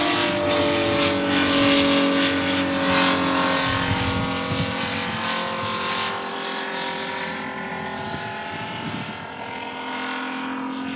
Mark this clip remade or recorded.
recorded